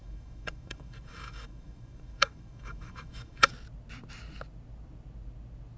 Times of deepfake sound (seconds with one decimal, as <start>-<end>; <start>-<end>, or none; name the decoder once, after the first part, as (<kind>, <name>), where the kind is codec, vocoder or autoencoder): 0.0-3.5 (autoencoder, DAC-VAE)